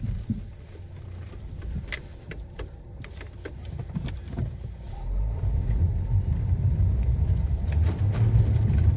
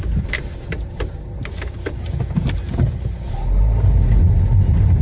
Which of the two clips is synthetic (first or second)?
first